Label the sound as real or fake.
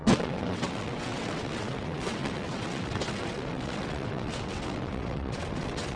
fake